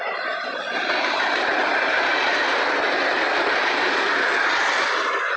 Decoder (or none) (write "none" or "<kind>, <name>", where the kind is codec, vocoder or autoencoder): vocoder, BigVGAN v2